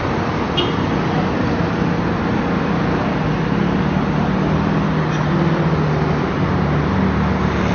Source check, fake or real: real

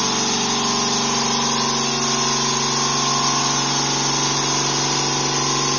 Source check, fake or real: real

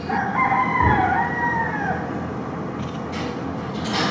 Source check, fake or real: real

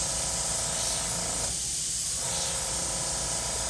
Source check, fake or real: real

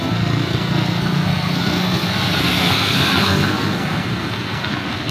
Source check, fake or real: fake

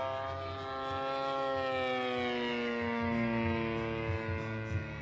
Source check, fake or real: real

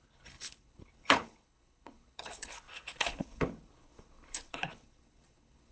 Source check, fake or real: fake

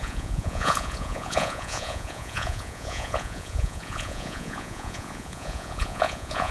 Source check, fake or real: fake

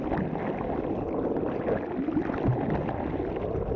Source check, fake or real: real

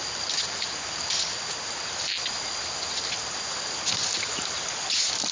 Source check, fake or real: real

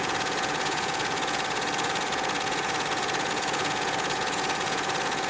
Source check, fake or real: fake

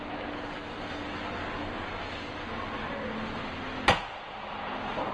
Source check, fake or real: real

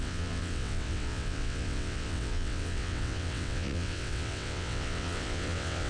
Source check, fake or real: fake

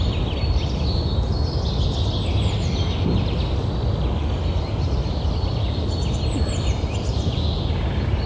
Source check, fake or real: real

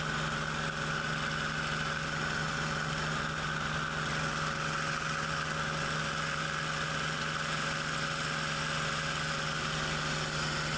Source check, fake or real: real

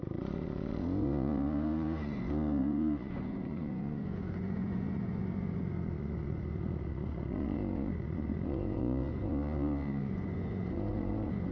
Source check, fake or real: fake